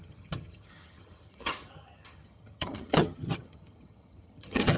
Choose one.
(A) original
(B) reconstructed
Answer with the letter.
B